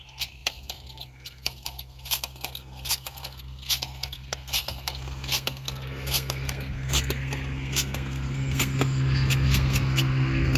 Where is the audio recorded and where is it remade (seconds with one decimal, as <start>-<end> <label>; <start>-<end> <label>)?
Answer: 0.0-10.6 remade